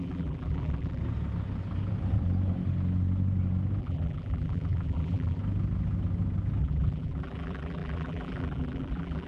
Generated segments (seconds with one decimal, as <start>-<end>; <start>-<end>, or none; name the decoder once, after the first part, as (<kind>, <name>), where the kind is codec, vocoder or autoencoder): 0.0-1.0 (vocoder, BigVGAN v2); 3.8-5.4; 6.6-9.3